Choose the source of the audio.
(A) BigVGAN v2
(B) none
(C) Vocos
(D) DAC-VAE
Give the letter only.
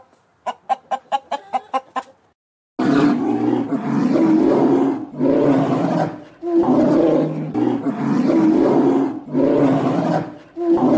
B